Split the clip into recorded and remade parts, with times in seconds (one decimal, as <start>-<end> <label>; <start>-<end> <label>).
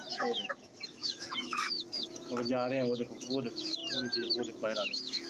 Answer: 0.0-3.8 remade; 3.8-4.5 recorded; 4.5-5.3 remade